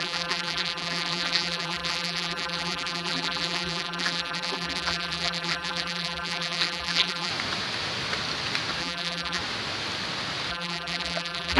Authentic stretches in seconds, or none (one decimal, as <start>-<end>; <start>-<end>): 7.3-8.8; 9.4-10.5